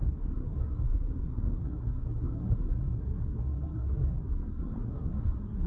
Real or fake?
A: fake